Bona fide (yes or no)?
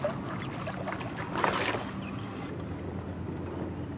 yes